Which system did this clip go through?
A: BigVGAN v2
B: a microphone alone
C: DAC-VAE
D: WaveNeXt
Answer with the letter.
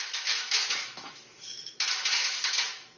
C